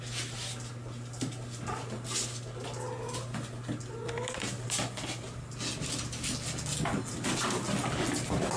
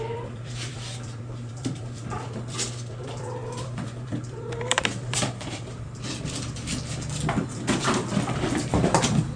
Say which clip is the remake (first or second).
second